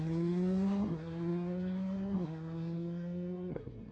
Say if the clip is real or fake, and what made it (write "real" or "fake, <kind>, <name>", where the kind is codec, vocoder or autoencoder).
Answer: fake, codec, SNAC